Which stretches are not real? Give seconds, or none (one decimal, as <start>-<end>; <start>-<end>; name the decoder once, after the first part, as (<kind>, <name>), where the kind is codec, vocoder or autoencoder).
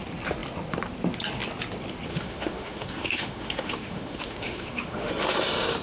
2.1-5.1 (autoencoder, DAC-VAE)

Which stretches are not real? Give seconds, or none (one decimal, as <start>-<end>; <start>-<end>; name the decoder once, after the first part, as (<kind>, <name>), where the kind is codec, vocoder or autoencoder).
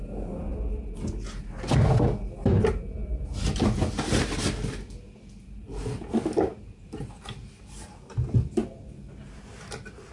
none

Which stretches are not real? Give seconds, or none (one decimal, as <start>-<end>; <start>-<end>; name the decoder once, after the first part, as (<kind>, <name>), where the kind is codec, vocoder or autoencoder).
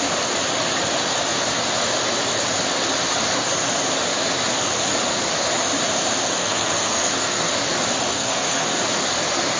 6.4-7.5 (codec, SNAC); 8.1-8.8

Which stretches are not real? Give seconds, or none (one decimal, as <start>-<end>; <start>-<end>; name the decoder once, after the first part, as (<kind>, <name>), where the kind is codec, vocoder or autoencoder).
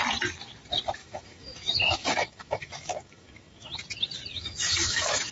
1.0-3.8 (autoencoder, DAC-VAE); 4.3-5.3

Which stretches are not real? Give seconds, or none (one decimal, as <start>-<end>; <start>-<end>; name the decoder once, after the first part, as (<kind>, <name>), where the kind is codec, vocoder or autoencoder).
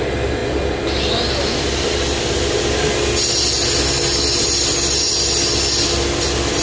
none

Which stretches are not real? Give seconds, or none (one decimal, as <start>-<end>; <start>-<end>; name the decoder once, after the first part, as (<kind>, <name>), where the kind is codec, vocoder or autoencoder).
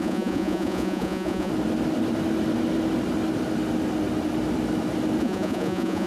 0.0-1.5 (vocoder, Vocos); 5.2-6.1